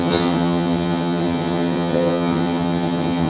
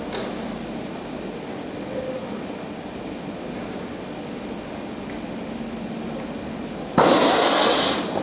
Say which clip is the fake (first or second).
first